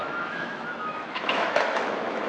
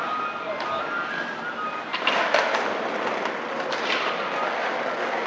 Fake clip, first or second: first